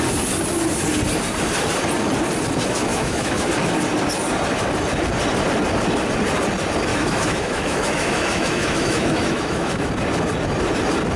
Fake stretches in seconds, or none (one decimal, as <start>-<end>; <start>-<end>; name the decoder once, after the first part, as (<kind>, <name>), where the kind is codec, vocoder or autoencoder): 2.9-3.5 (autoencoder, DAC-VAE); 6.9-9.9

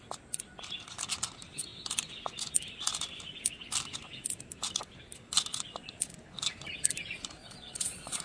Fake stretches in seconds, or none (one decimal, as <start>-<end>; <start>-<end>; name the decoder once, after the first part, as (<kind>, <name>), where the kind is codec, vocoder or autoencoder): 7.4-8.2 (vocoder, Vocos)

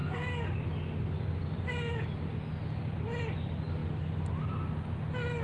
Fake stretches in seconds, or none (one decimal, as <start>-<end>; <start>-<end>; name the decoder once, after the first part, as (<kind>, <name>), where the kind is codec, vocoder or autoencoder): none

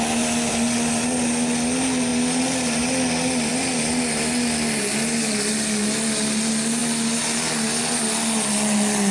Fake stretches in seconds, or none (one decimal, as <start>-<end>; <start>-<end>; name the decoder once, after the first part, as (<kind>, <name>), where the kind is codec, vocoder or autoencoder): none

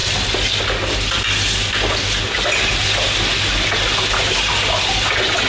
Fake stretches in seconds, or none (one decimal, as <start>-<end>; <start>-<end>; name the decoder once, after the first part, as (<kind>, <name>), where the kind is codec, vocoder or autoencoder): none

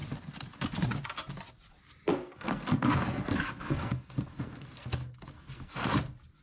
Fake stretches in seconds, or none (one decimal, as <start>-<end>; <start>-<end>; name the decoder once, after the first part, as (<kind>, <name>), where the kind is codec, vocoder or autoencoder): 2.1-5.9 (codec, SNAC)

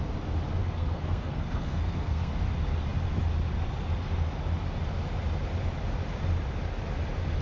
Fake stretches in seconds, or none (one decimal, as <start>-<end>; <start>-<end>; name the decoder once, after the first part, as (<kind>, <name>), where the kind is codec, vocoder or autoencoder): 0.6-2.3 (codec, SNAC)

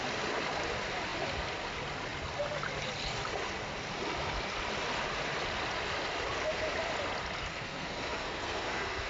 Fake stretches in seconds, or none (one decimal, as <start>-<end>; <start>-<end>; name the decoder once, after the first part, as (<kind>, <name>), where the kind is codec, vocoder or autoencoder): 7.5-9.1 (codec, SNAC)